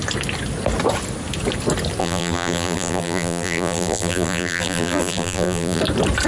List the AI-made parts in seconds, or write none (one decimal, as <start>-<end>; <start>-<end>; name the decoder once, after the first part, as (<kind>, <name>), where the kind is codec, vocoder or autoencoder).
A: 2.0-5.8 (vocoder, BigVGAN v2)